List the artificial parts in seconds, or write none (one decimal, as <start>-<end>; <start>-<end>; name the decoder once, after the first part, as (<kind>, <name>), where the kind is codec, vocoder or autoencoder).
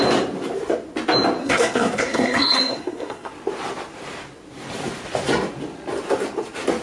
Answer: 1.4-3.3 (codec, SNAC)